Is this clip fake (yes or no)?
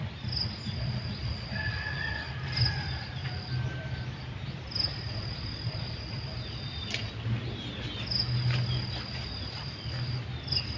no